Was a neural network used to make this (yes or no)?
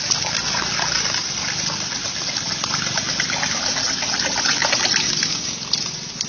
no